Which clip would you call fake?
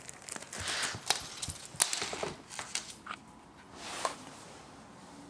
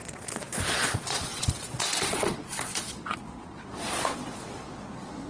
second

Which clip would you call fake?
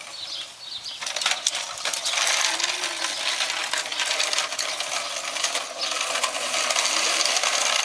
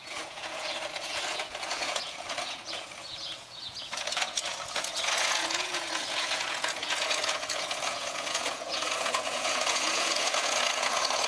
second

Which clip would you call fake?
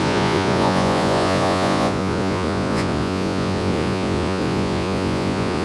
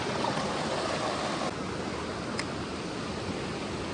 first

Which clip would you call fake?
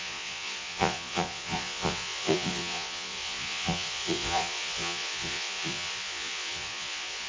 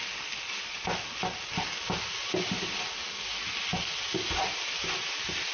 first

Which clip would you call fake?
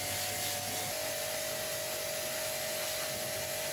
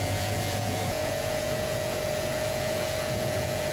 second